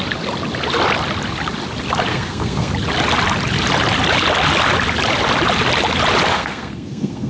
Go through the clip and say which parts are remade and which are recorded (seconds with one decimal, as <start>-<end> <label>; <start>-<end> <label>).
0.0-2.1 recorded; 2.1-2.7 remade; 2.7-6.3 recorded; 6.3-7.3 remade